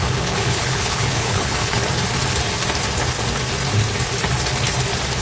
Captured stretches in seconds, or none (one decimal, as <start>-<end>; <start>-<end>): 1.8-5.2